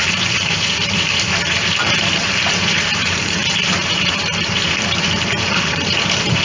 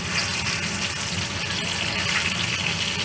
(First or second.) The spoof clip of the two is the first